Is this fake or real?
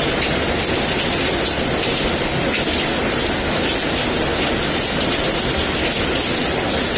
real